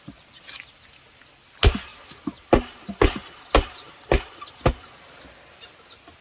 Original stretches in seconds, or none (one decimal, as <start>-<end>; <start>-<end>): 0.0-6.2